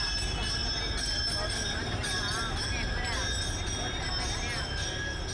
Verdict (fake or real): real